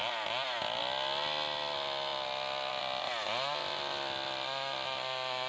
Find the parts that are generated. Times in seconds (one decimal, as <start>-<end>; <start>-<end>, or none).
none